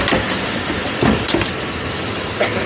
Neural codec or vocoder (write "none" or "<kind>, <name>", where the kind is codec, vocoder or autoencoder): none